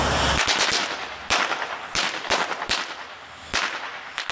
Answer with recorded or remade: recorded